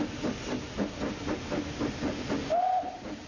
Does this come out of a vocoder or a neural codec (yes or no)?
no